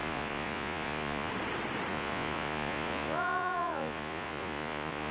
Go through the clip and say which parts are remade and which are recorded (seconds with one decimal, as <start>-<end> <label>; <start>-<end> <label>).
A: 0.0-1.3 remade; 1.3-1.9 recorded; 1.9-5.1 remade